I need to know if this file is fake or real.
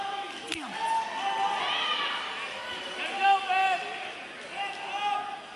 real